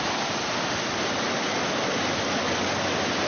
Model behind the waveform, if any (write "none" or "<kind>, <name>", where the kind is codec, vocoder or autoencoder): none